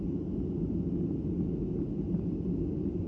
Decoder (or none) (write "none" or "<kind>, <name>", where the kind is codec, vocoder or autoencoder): none